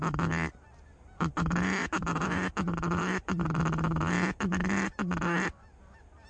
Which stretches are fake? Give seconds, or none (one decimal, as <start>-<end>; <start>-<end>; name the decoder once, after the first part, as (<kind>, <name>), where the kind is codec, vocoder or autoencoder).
1.8-3.6 (vocoder, BigVGAN v2)